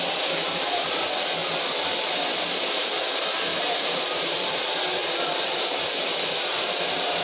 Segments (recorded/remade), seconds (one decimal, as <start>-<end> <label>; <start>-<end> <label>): 0.0-3.5 recorded; 3.5-4.7 remade; 4.7-7.2 recorded